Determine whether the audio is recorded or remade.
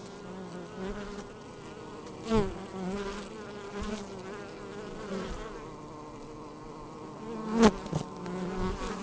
recorded